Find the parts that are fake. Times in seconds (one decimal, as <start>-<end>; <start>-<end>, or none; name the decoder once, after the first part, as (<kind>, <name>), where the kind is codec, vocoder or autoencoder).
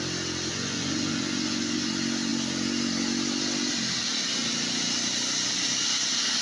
0.5-1.9 (vocoder, Vocos)